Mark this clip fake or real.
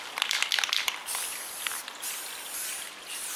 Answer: real